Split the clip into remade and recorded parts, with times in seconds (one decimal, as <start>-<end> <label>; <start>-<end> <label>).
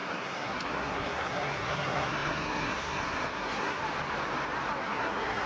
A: 0.0-3.8 remade; 3.8-4.8 recorded; 4.8-5.5 remade